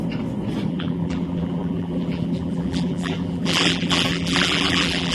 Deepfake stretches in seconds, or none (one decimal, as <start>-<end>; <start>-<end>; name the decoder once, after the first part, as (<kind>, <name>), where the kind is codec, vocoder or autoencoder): 0.7-5.1 (vocoder, BigVGAN v2)